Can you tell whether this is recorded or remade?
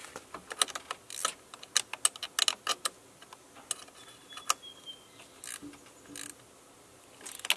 recorded